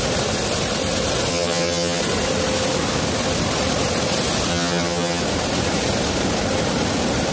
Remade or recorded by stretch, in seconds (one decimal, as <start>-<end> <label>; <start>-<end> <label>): 0.0-1.3 recorded; 1.3-2.0 remade; 2.0-4.5 recorded; 4.5-5.2 remade; 5.2-7.3 recorded